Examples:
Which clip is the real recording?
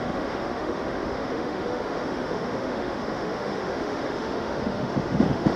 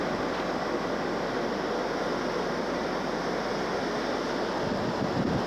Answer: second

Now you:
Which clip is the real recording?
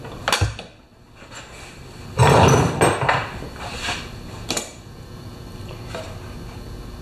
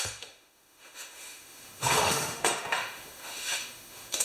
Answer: first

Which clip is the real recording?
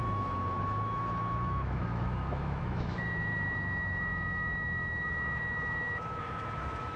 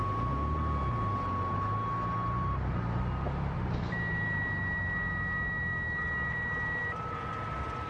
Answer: second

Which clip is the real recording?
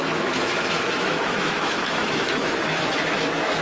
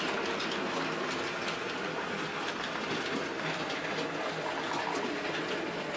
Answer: second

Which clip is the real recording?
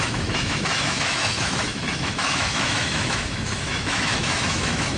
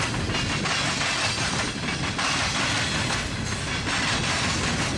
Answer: second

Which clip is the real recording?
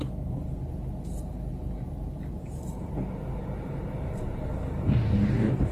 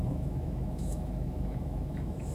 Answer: first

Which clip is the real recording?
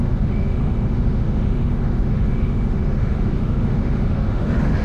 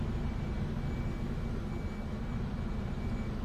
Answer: second